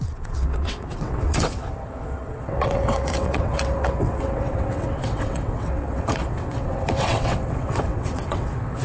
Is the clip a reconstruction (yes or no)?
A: yes